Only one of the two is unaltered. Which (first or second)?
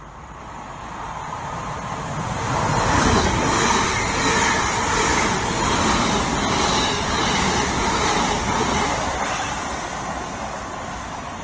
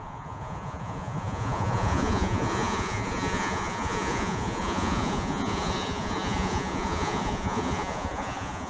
first